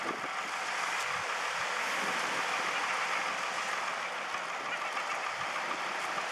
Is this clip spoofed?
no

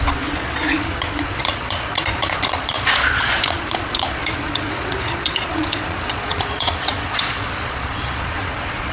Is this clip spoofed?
yes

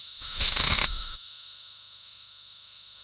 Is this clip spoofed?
yes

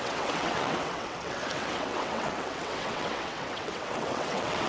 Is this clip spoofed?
yes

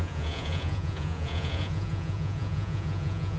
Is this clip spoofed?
yes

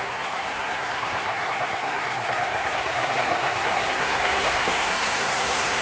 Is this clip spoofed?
yes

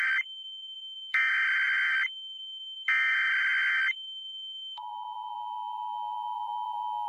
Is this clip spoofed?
yes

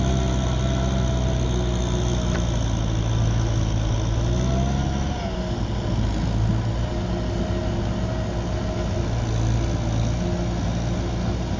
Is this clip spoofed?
no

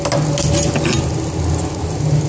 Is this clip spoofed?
no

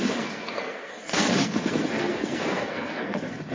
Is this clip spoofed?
yes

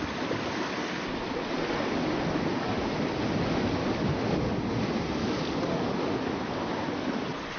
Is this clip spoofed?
no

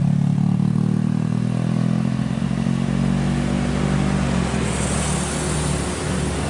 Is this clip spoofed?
no